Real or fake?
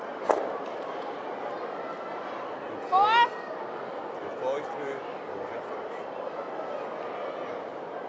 real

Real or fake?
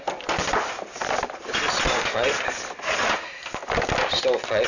real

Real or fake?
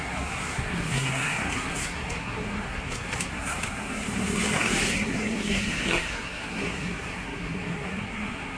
fake